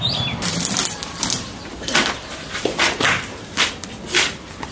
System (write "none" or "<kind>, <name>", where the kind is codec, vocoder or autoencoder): vocoder, BigVGAN v2